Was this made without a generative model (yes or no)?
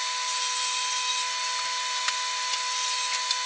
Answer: yes